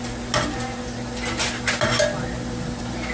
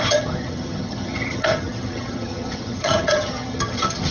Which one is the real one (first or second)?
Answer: first